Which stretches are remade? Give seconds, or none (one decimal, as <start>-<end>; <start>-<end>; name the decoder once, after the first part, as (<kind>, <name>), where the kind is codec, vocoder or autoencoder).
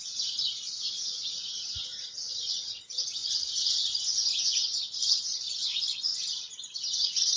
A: 0.0-6.1 (vocoder, Vocos); 6.9-7.4